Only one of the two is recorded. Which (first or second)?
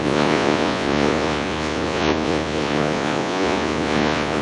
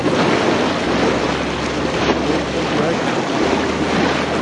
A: second